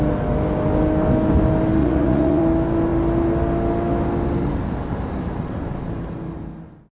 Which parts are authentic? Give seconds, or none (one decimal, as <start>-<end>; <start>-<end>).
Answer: 0.0-1.8; 2.4-6.9